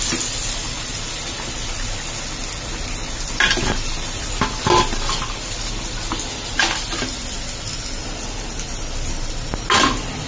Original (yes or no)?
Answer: yes